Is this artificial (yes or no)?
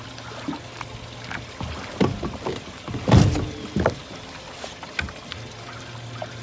no